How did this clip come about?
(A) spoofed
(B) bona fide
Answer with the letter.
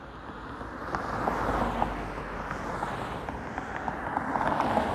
B